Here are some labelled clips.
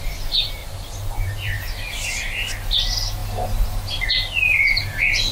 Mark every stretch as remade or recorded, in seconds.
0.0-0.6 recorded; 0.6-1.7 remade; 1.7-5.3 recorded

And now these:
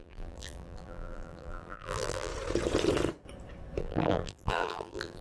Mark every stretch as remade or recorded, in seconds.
0.0-2.3 remade; 2.3-3.8 recorded; 3.8-5.2 remade

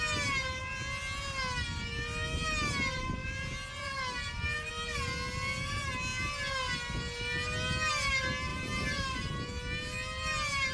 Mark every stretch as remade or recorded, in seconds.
0.0-3.2 recorded; 3.2-4.7 remade; 4.7-8.5 recorded; 8.5-9.3 remade; 9.3-10.7 recorded

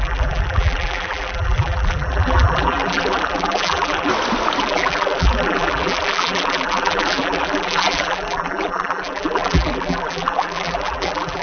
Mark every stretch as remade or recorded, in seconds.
0.0-4.1 remade; 4.1-4.6 recorded; 4.6-11.4 remade

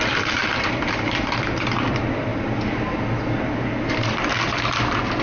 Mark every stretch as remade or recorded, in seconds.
0.0-2.3 remade; 2.3-3.9 recorded; 3.9-5.2 remade

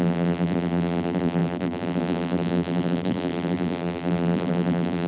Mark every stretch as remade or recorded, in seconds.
0.0-5.1 remade